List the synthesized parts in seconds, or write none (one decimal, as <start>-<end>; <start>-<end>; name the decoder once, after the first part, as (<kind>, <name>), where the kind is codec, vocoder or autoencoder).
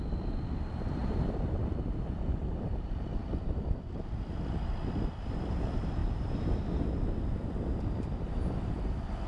1.0-3.3 (vocoder, BigVGAN v2)